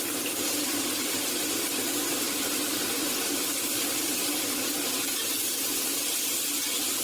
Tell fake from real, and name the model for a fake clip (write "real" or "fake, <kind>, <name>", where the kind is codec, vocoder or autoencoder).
real